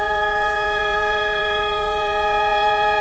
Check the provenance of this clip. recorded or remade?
remade